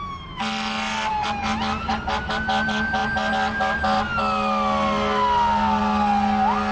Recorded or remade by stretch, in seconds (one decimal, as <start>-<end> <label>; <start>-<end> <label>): 0.0-6.7 recorded